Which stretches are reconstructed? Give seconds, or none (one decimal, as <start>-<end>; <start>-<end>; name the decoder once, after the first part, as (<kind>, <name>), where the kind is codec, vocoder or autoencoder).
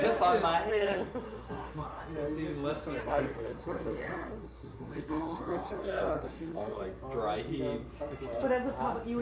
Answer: 0.7-2.0 (codec, SNAC); 3.0-6.8